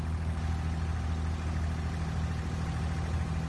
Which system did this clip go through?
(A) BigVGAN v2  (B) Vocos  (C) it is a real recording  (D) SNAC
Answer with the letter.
C